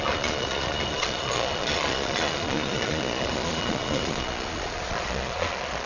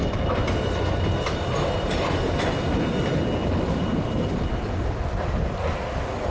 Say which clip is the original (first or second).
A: second